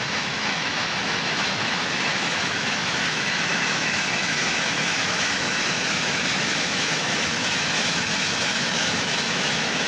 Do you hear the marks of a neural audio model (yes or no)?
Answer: yes